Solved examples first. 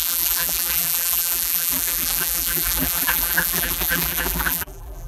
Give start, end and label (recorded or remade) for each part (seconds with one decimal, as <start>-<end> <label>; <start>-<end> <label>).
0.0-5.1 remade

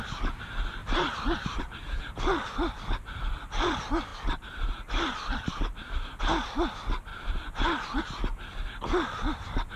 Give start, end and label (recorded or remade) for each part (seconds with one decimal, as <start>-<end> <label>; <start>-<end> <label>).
0.0-0.8 recorded; 0.8-1.6 remade; 1.6-4.1 recorded; 4.1-6.2 remade; 6.2-7.1 recorded; 7.1-8.0 remade; 8.0-9.8 recorded

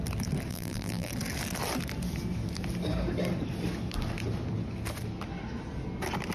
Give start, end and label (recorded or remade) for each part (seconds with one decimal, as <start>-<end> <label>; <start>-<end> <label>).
0.0-0.5 recorded; 0.5-1.1 remade; 1.1-6.3 recorded

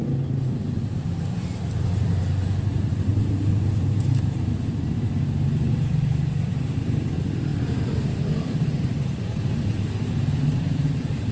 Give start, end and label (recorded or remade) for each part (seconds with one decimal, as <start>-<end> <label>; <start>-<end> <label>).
0.0-7.5 remade; 7.5-8.4 recorded; 8.4-11.3 remade

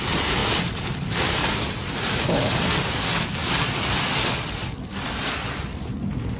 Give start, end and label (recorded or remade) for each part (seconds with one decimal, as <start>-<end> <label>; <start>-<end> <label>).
0.0-0.4 recorded; 0.4-1.5 remade; 1.5-3.4 recorded; 3.4-5.3 remade; 5.3-6.4 recorded

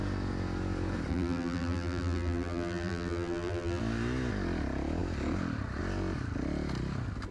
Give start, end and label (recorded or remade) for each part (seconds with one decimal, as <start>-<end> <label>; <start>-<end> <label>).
0.0-1.1 recorded; 1.1-3.8 remade; 3.8-7.3 recorded

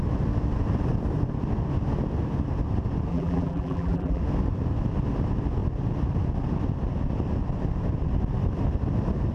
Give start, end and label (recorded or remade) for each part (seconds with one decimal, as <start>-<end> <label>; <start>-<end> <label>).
0.0-3.1 recorded; 3.1-4.2 remade; 4.2-9.3 recorded